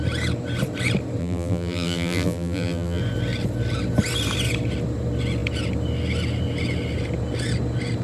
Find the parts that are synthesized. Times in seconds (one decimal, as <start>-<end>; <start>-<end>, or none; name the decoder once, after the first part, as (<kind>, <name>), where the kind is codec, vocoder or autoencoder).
1.2-3.0 (vocoder, BigVGAN v2)